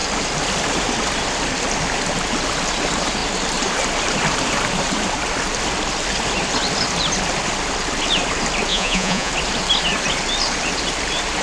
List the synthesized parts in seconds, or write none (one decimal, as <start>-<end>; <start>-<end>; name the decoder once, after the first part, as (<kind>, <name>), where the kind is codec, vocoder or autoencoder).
8.7-9.3 (vocoder, Vocos)